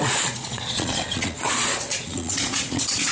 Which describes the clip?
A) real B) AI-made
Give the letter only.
B